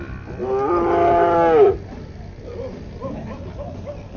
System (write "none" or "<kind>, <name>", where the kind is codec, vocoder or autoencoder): none